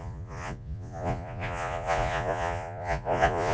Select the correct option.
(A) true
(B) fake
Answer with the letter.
B